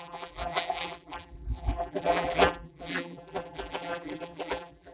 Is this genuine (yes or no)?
no